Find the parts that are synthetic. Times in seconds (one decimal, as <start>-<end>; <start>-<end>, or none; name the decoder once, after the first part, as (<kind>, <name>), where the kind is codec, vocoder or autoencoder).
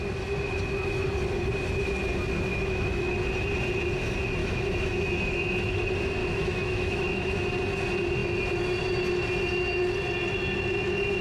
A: 2.5-3.1 (autoencoder, DAC-VAE); 4.4-5.8; 6.2-7.5